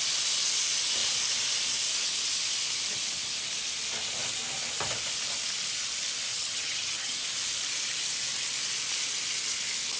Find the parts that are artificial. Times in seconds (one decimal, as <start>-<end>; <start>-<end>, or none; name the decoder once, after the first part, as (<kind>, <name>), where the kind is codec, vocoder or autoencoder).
6.3-7.2 (vocoder, HiFi-GAN)